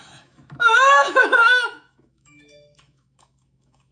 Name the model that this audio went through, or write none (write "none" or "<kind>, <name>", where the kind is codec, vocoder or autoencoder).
autoencoder, DAC-VAE